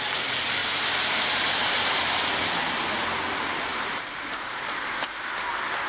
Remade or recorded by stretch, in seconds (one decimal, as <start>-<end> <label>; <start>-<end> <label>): 0.0-0.6 recorded; 0.6-2.0 remade; 2.0-3.7 recorded; 3.7-4.9 remade; 4.9-5.9 recorded